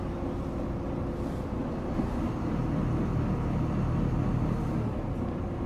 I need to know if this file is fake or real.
real